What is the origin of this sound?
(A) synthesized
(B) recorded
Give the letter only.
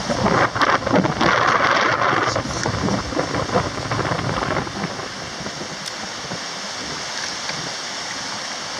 B